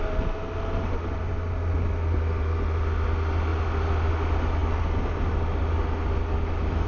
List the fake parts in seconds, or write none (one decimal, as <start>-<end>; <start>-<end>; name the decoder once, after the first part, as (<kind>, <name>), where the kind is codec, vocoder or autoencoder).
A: none